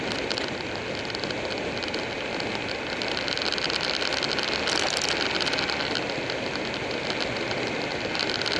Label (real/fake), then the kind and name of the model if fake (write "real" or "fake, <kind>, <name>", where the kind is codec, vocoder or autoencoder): real